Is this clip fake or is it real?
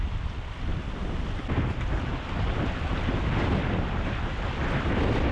real